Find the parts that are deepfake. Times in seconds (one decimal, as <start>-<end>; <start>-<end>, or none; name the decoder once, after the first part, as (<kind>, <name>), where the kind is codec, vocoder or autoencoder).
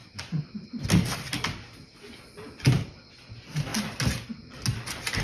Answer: none